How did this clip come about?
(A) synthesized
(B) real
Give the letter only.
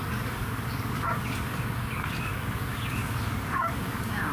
A